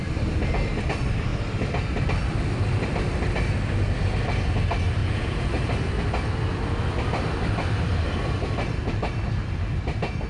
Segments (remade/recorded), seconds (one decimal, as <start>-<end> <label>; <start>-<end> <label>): 0.0-5.0 recorded; 5.0-5.5 remade; 5.5-10.3 recorded